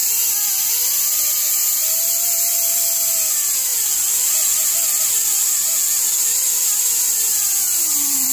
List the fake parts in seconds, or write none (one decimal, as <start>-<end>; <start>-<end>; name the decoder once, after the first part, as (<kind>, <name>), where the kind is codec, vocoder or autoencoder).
none

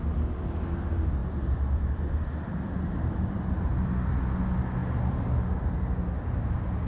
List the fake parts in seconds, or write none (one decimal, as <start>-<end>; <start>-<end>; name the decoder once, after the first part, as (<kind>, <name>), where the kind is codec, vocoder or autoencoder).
1.2-3.6 (vocoder, BigVGAN v2); 4.8-5.4

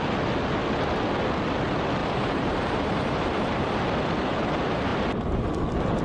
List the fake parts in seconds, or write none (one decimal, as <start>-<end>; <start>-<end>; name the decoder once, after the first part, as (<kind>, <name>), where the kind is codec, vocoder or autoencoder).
2.0-3.8 (vocoder, BigVGAN v2)

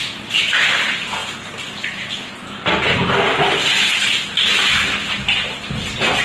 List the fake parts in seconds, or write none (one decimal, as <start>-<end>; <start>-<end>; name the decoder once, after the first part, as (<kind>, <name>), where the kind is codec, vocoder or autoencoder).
none

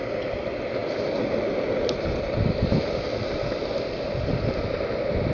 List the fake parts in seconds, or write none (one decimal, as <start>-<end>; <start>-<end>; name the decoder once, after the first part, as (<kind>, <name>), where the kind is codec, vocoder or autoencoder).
none

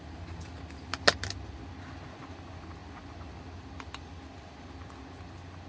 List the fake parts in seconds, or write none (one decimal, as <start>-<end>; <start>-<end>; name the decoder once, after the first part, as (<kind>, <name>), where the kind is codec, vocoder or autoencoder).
none

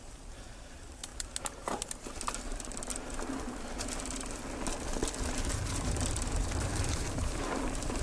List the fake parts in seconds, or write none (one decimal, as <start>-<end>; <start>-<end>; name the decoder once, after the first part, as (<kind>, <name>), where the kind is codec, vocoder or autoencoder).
0.0-1.1 (vocoder, BigVGAN v2); 5.5-8.0